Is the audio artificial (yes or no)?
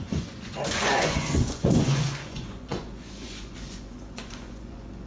yes